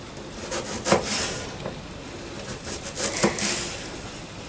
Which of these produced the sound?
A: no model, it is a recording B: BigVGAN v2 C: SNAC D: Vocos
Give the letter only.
A